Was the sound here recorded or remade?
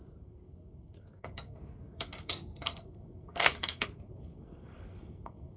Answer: remade